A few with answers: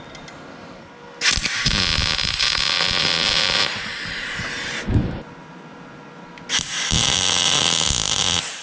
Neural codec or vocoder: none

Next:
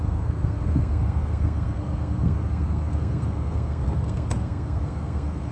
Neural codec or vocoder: codec, SNAC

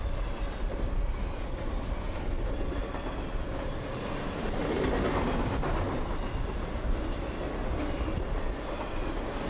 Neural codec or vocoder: none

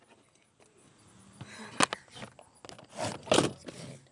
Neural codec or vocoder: none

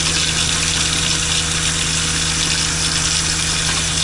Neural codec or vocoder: none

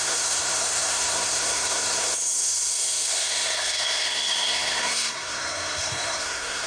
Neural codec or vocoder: codec, SNAC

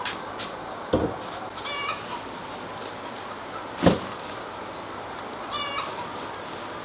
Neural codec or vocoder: none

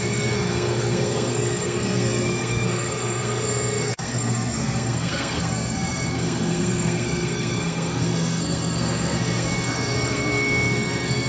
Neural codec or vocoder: codec, SNAC